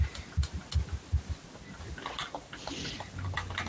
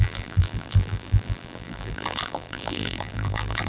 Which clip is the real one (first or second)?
first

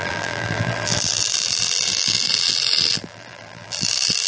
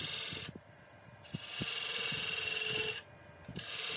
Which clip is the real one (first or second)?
second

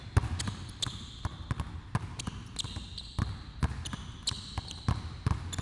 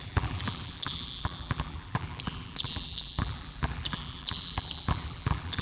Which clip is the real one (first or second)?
first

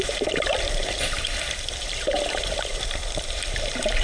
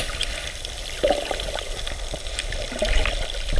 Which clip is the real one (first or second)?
second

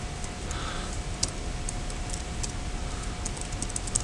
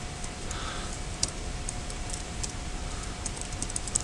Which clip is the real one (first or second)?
first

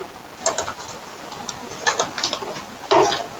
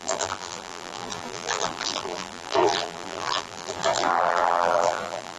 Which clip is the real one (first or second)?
first